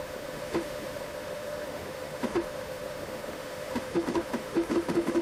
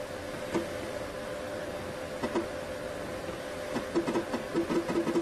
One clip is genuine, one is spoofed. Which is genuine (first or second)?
second